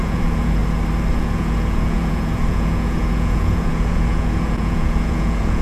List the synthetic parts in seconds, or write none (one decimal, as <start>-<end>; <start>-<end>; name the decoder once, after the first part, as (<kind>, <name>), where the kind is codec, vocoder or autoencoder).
0.0-0.6 (vocoder, Vocos); 1.1-5.6